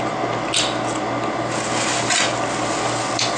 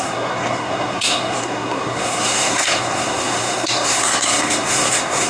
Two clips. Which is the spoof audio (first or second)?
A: second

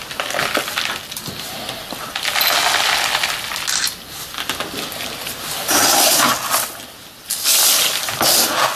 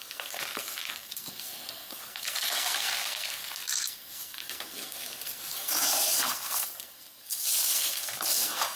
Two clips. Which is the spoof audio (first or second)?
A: second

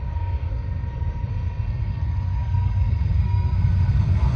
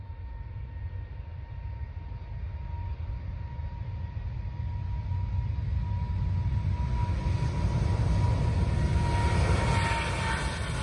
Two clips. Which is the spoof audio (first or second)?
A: first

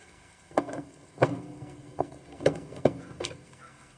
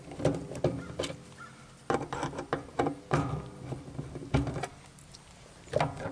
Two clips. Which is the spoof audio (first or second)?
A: first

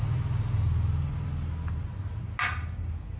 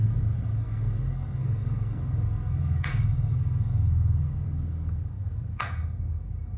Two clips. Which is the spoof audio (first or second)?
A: second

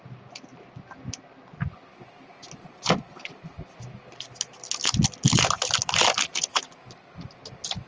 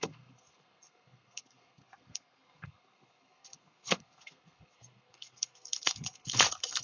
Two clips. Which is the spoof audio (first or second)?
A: second